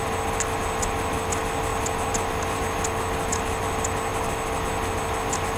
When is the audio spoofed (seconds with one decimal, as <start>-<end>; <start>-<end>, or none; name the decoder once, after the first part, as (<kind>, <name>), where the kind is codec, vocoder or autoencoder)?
none